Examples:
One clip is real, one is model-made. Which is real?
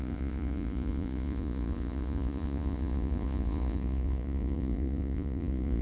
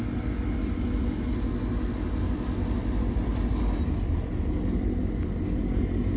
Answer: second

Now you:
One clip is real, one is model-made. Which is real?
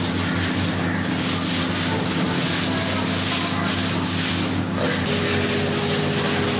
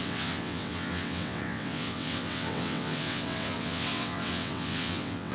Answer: first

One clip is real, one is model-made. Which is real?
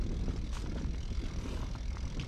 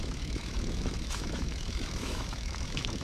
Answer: first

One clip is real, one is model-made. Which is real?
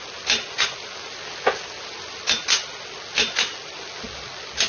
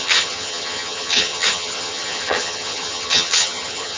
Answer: first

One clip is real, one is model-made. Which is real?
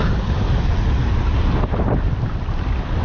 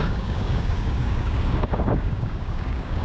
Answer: first